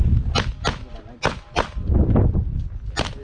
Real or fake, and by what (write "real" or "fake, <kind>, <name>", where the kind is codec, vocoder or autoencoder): real